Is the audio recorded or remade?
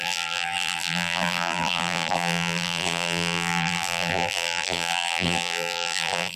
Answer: remade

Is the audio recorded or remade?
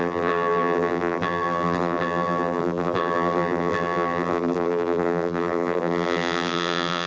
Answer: remade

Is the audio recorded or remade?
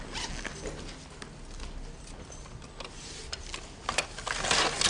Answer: recorded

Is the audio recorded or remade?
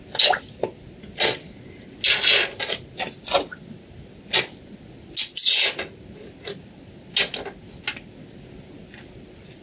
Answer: recorded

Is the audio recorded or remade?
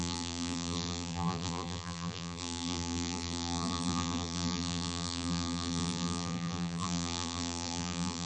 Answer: remade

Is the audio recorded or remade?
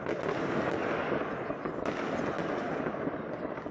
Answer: recorded